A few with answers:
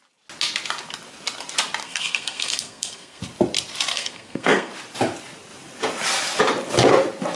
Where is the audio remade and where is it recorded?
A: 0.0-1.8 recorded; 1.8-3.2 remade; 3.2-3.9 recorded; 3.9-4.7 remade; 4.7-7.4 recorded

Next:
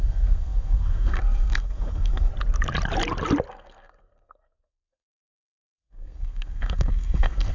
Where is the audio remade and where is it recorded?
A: 0.0-2.3 remade; 2.3-3.5 recorded; 3.5-7.5 remade

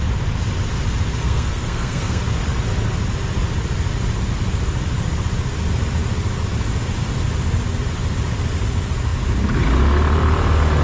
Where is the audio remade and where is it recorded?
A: 0.0-1.2 recorded; 1.2-2.2 remade; 2.2-10.8 recorded

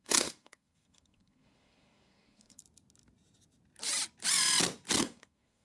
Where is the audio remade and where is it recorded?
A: 0.0-2.6 remade; 2.6-5.0 recorded; 5.0-5.6 remade

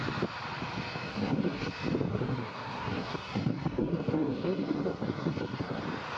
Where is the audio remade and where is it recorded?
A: 0.0-1.1 recorded; 1.1-1.7 remade; 1.7-2.1 recorded; 2.1-5.8 remade; 5.8-6.2 recorded

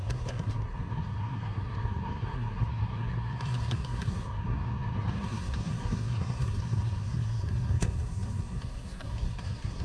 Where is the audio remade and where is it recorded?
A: 0.0-9.8 remade

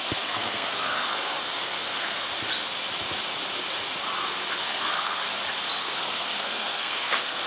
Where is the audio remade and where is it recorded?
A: 0.0-2.3 remade; 2.3-4.6 recorded; 4.6-5.2 remade; 5.2-5.8 recorded; 5.8-7.5 remade

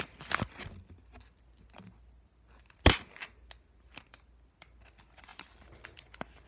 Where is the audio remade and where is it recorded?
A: 0.0-6.5 recorded